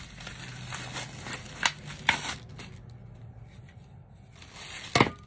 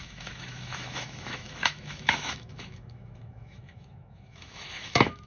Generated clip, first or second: second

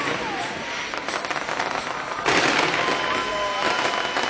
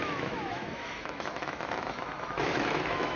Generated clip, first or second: second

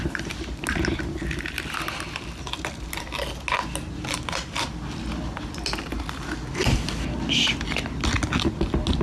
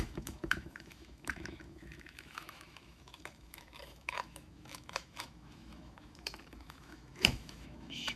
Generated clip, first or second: second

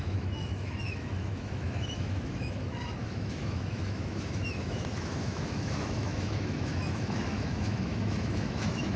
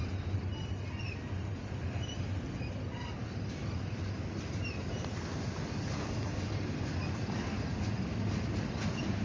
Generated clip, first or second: first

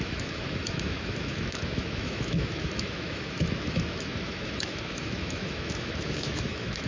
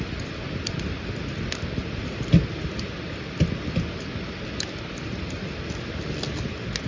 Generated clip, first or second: first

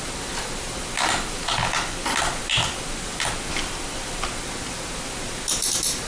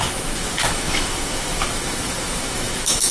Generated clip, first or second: second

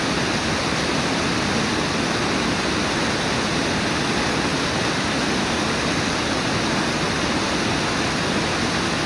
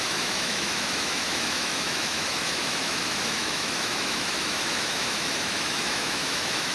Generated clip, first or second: second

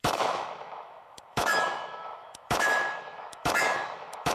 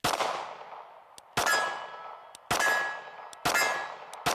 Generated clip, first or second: first